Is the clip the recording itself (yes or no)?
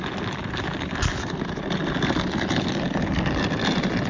yes